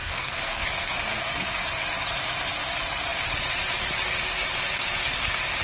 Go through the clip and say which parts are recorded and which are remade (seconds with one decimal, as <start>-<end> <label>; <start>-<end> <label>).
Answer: 0.0-1.5 remade; 1.5-5.6 recorded